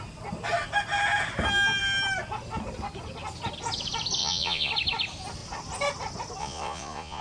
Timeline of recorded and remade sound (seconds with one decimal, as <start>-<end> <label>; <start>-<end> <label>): 0.0-4.2 recorded; 4.2-4.7 remade; 4.7-6.4 recorded; 6.4-7.2 remade